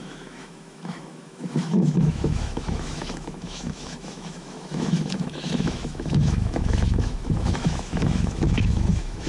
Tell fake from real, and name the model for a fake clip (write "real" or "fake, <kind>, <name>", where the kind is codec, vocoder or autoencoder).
fake, autoencoder, DAC-VAE